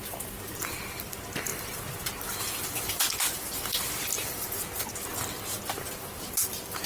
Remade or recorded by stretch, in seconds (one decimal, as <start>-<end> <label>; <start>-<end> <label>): 0.0-6.9 recorded

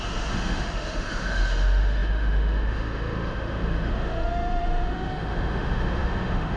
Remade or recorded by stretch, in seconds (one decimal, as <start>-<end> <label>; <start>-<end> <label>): 0.0-6.6 remade

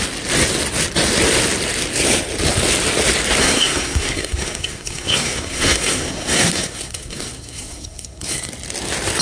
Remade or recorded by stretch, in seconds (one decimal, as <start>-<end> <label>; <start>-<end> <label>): 0.0-3.4 recorded; 3.4-8.5 remade; 8.5-9.2 recorded

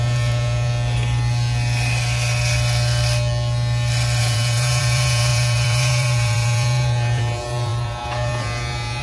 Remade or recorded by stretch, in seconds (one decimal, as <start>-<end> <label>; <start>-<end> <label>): 0.0-0.7 remade; 0.7-4.2 recorded; 4.2-9.0 remade

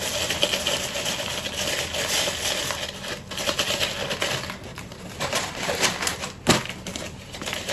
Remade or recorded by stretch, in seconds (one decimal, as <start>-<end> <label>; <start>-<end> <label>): 0.0-4.7 recorded; 4.7-5.9 remade; 5.9-6.9 recorded; 6.9-7.7 remade

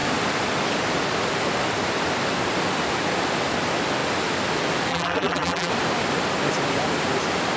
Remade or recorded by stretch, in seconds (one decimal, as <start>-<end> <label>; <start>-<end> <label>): 0.0-4.9 recorded; 4.9-5.7 remade; 5.7-7.6 recorded